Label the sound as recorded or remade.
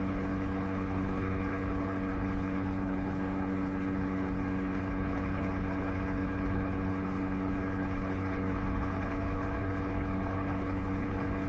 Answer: remade